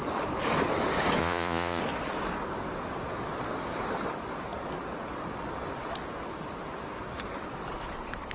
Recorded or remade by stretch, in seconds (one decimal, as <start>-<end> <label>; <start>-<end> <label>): 0.0-1.2 recorded; 1.2-1.8 remade; 1.8-8.3 recorded

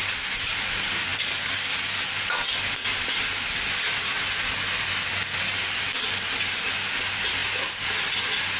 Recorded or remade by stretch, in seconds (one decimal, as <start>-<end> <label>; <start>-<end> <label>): 0.0-8.6 recorded

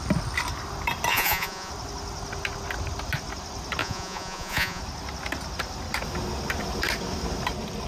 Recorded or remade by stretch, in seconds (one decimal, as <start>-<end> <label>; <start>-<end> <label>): 0.0-1.1 recorded; 1.1-1.7 remade; 1.7-3.8 recorded; 3.8-4.8 remade; 4.8-7.9 recorded

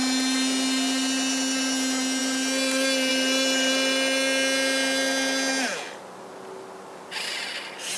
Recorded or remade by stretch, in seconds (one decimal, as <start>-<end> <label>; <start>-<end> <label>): 0.0-8.0 recorded

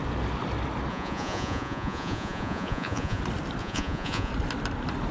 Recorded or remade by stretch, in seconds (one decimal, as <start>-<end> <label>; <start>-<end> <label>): 0.0-0.9 recorded; 0.9-3.2 remade; 3.2-3.6 recorded; 3.6-4.3 remade; 4.3-5.1 recorded